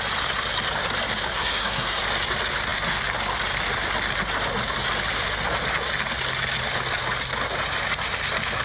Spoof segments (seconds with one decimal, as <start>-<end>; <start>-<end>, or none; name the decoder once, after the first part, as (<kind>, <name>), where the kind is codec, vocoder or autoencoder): 1.3-2.0 (codec, SNAC)